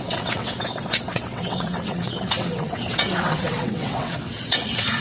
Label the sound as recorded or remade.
remade